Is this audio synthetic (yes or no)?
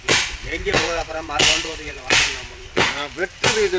yes